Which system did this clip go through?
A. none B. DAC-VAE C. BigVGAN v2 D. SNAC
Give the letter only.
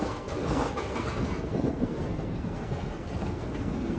D